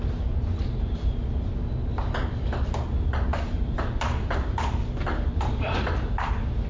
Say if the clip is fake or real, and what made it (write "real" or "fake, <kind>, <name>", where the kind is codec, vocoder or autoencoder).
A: real